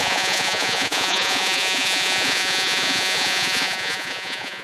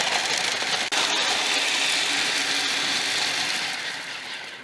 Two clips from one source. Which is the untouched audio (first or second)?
second